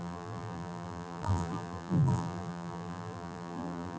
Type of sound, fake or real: fake